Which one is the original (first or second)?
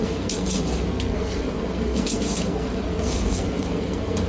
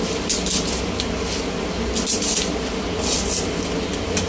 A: second